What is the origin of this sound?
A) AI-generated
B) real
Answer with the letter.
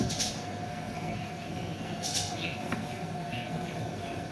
A